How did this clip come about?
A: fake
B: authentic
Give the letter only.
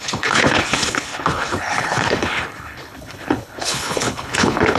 A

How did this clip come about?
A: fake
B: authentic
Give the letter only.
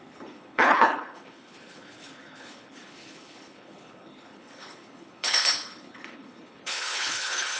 A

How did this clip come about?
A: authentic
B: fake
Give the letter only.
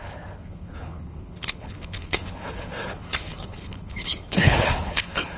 B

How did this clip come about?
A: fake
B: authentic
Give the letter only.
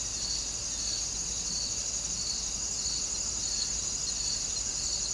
B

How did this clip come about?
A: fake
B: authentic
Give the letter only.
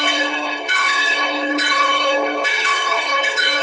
A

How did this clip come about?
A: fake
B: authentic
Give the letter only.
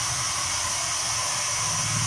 B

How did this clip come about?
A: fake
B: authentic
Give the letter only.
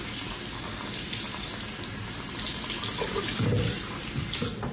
B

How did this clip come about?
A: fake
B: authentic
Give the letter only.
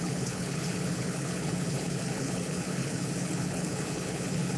A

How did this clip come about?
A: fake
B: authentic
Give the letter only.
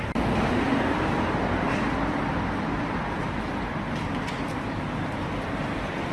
B